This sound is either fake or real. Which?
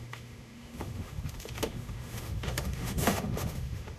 fake